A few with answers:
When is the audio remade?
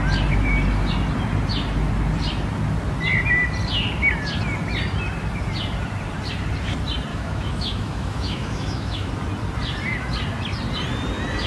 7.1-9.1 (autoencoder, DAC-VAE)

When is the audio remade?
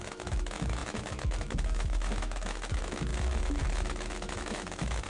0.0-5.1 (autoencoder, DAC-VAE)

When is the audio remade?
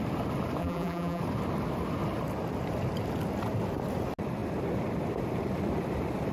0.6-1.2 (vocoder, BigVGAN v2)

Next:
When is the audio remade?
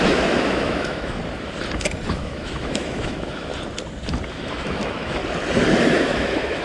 0.0-1.2 (autoencoder, DAC-VAE); 2.1-3.5; 4.3-5.2; 5.8-6.6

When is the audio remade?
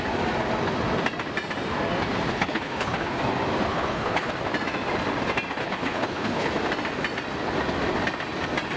2.3-3.2 (codec, HILCodec); 3.7-4.3; 5.6-6.5